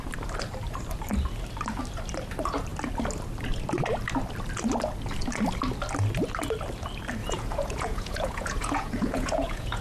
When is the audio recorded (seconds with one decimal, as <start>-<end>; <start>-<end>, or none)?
0.0-7.2